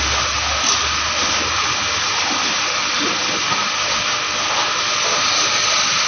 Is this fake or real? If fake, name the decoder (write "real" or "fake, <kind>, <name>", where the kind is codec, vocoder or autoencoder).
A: real